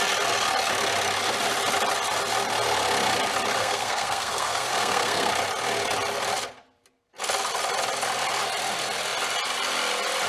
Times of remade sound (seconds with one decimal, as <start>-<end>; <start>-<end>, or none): 3.6-5.3